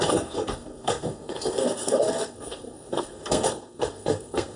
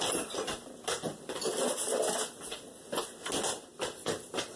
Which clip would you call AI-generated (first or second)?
first